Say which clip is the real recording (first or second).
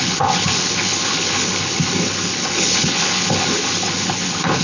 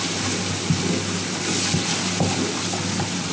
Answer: second